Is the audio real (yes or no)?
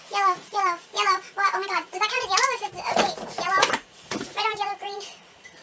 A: no